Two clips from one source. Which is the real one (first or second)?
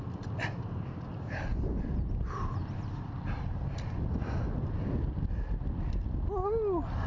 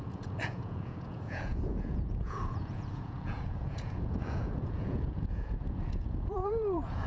first